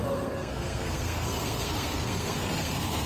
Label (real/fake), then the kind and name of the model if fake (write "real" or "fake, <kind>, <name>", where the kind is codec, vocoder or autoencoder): fake, codec, SNAC